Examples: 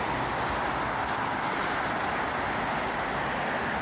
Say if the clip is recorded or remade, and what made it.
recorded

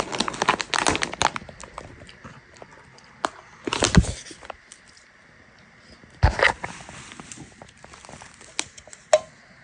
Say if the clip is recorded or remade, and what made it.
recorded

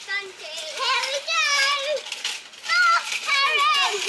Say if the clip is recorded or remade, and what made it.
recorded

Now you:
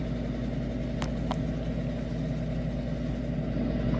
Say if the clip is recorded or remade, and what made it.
recorded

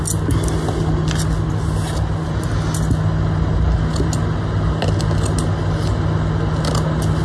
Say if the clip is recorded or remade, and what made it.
recorded